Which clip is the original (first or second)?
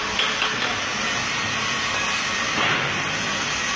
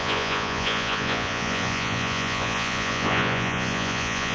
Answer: first